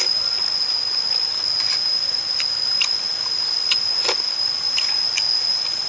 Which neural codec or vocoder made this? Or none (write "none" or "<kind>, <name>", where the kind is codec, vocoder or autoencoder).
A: none